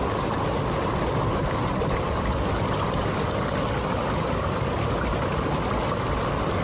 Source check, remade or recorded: recorded